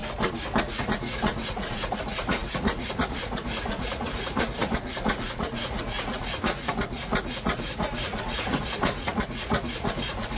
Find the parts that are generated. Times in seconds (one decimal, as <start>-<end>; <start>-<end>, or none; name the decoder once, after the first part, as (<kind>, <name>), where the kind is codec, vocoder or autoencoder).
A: 0.6-10.4 (vocoder, Vocos)